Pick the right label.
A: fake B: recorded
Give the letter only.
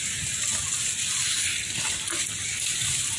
B